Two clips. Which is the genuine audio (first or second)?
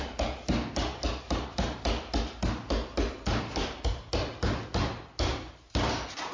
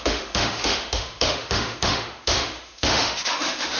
first